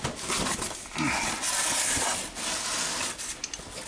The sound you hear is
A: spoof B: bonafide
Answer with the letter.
B